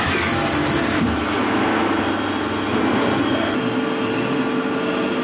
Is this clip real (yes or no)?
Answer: yes